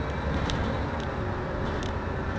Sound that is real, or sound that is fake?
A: real